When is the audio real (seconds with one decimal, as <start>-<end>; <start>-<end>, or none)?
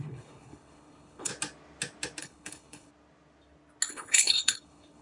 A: 1.3-2.2; 2.9-3.9